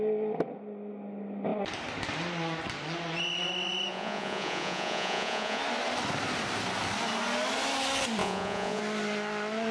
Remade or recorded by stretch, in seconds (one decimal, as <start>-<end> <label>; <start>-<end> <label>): 0.0-3.9 recorded; 3.9-5.6 remade; 5.6-8.2 recorded; 8.2-8.8 remade; 8.8-9.7 recorded